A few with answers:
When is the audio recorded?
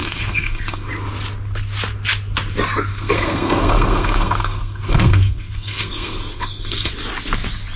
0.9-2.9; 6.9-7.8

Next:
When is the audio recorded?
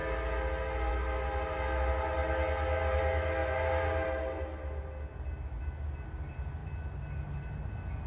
0.0-8.1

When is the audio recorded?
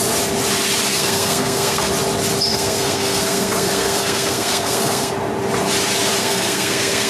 0.0-0.9; 1.9-2.5; 5.1-6.2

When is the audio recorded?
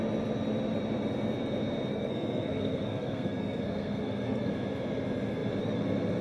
0.0-1.9; 4.5-6.2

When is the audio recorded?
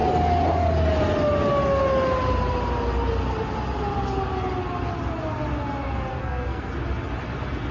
0.0-6.1; 6.7-7.7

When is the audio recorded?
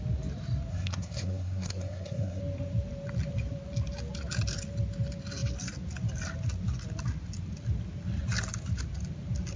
0.0-0.7; 2.4-9.6